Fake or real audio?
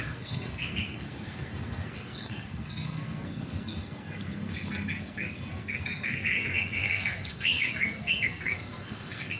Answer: fake